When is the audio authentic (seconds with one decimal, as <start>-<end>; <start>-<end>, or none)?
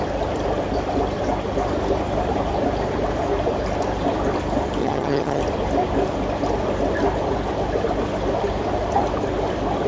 0.0-4.8; 5.4-9.9